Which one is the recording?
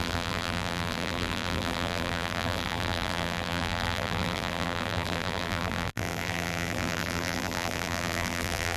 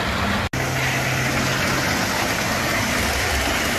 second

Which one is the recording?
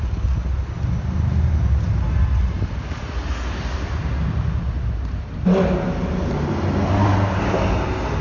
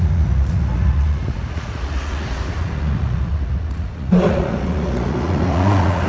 first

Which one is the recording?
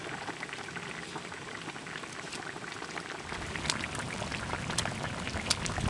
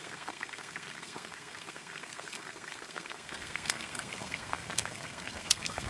first